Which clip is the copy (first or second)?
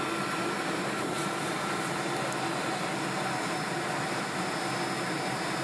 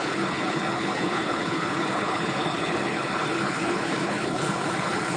second